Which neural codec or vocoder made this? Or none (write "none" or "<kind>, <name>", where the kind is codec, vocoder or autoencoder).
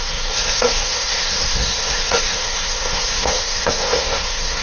codec, SNAC